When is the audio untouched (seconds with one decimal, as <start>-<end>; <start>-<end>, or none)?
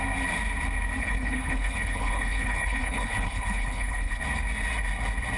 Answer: 0.0-1.0; 4.2-5.4